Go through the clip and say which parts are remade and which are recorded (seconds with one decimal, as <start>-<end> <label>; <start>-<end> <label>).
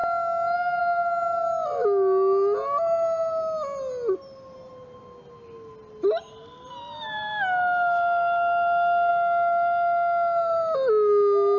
0.0-11.6 recorded